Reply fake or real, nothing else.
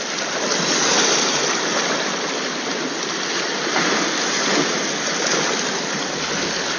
real